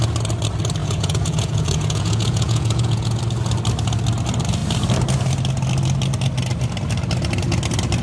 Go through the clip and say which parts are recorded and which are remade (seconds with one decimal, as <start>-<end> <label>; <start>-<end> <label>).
0.0-0.8 recorded; 0.8-3.2 remade; 3.2-8.0 recorded